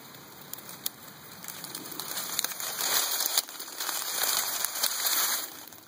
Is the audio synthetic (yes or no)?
yes